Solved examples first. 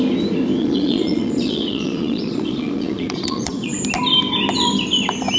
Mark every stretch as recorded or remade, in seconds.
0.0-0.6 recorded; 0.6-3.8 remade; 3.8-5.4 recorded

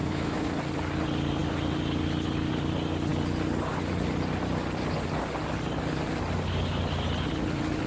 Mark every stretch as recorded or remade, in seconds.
0.0-0.5 remade; 0.5-7.9 recorded

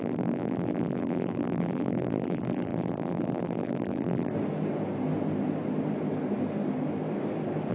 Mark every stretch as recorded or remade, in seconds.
0.0-4.3 remade; 4.3-7.7 recorded

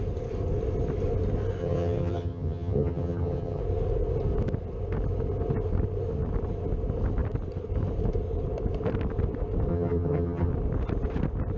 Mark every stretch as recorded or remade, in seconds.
0.0-1.6 recorded; 1.6-3.6 remade; 3.6-9.7 recorded; 9.7-10.5 remade; 10.5-11.6 recorded

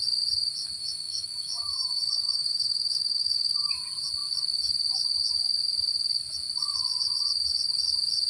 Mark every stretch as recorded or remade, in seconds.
0.0-0.8 recorded; 0.8-3.8 remade; 3.8-8.3 recorded

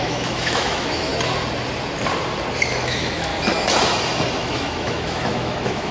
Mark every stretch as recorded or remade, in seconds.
0.0-1.1 remade; 1.1-2.7 recorded; 2.7-3.3 remade; 3.3-4.4 recorded; 4.4-5.9 remade